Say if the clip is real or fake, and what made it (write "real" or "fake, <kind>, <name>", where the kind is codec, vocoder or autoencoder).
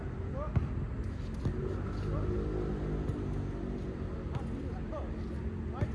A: real